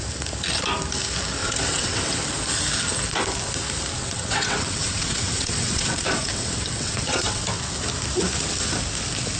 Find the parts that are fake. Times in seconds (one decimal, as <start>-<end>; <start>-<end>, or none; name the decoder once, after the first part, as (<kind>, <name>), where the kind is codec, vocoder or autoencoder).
1.4-2.2 (vocoder, WaveNeXt); 4.0-7.4